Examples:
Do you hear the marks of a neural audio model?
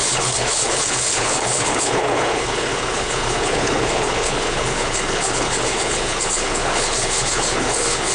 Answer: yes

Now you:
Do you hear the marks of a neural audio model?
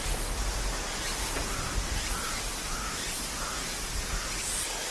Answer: no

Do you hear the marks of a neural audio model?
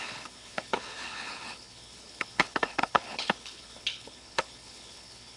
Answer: yes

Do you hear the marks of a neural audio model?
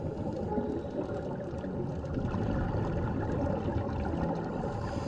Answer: no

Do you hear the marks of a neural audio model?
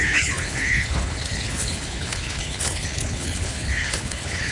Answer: yes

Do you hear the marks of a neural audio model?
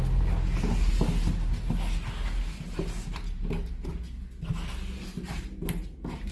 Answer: no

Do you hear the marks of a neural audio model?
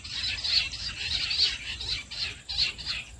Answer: no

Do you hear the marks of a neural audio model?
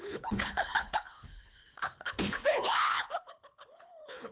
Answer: yes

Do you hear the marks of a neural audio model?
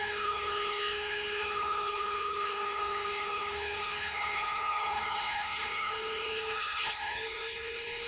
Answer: yes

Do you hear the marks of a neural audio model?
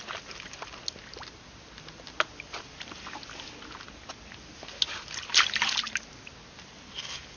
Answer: no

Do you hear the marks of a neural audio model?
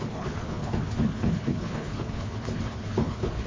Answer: yes